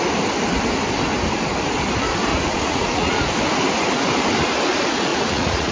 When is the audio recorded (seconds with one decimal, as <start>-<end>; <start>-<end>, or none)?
0.0-2.3; 3.2-5.1